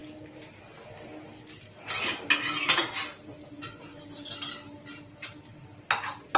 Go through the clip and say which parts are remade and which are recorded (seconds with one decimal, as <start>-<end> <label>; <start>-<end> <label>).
0.0-6.4 recorded